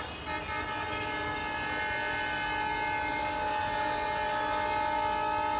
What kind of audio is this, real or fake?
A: real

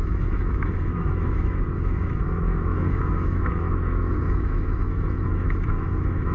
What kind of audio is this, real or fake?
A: fake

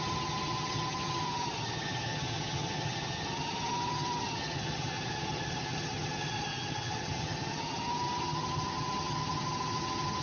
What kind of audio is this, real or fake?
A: fake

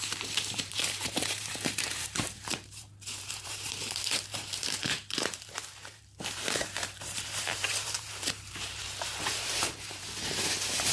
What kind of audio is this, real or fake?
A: fake